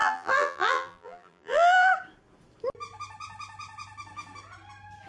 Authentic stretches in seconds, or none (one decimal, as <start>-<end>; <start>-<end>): 1.9-5.1